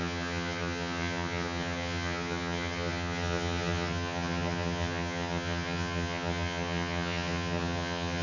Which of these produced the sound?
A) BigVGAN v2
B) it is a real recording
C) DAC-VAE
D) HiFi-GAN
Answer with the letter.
D